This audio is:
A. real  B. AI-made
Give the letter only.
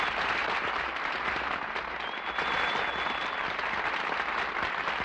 A